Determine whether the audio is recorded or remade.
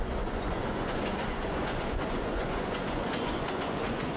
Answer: remade